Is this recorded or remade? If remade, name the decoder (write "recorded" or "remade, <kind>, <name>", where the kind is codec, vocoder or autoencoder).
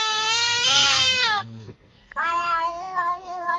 remade, codec, SNAC